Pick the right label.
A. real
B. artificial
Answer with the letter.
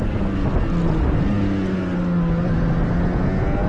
A